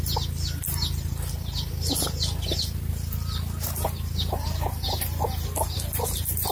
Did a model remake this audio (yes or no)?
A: no